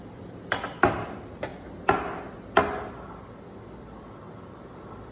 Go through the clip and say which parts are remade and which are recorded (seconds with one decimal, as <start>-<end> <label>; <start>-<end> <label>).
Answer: 0.0-5.1 recorded